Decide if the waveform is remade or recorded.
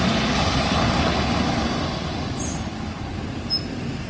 recorded